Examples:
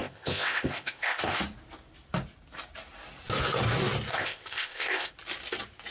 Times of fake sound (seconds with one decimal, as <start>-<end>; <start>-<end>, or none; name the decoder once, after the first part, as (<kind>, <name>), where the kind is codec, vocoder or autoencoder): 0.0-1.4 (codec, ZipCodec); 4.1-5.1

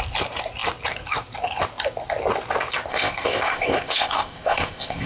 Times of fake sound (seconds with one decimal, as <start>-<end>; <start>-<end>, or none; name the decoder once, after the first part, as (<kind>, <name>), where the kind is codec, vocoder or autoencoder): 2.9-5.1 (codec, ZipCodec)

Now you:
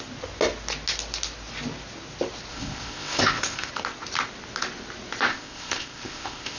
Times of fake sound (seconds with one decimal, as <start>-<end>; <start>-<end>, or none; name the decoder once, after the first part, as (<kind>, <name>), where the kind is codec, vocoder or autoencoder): 2.5-3.7 (codec, ZipCodec); 5.3-6.6